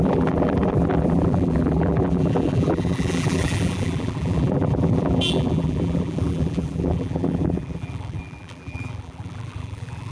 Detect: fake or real fake